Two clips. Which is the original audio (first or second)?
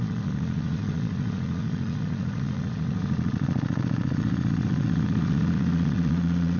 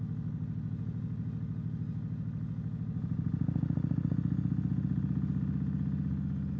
second